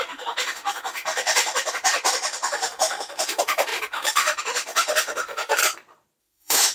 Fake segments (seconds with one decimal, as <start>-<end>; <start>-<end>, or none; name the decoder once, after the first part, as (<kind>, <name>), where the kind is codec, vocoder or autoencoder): 0.0-5.6 (autoencoder, DAC-VAE); 6.2-6.7